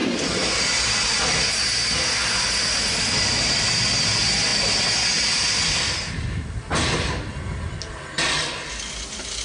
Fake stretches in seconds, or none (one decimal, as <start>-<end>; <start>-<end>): none